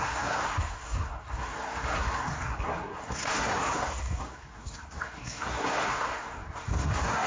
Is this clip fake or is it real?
fake